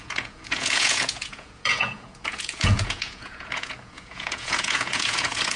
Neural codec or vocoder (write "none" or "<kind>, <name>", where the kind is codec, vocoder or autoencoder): vocoder, Vocos